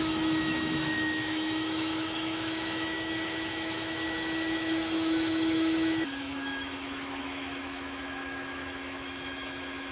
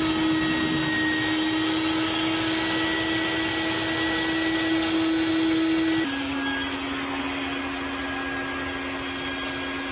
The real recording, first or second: second